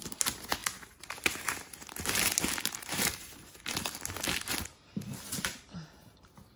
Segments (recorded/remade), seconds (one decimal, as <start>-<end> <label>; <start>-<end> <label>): 0.0-6.6 remade